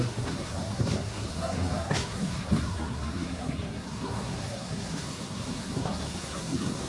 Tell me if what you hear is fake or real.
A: fake